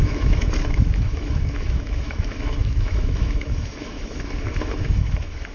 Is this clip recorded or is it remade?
remade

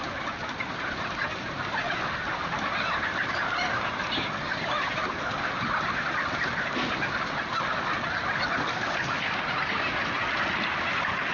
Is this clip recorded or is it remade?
recorded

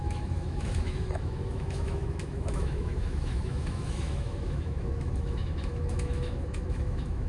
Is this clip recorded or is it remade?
remade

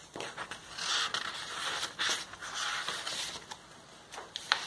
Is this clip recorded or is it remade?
recorded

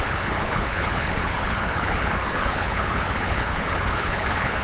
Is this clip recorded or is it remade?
remade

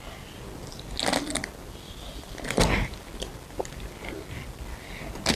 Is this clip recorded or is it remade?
recorded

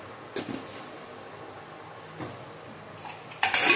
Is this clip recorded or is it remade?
recorded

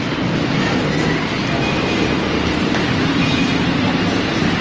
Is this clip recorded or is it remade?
recorded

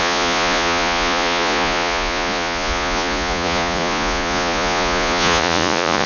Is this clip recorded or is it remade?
remade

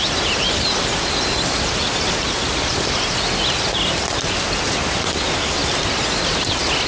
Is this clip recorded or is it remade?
recorded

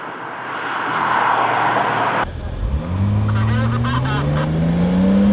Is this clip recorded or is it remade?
recorded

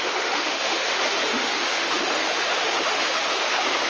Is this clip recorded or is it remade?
remade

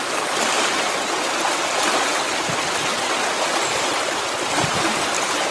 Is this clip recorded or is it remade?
recorded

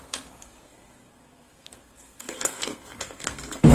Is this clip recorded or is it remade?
remade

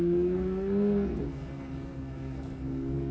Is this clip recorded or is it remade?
remade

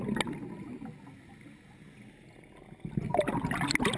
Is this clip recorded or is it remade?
recorded